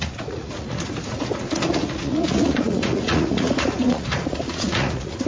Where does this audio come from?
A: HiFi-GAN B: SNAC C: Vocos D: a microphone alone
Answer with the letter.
C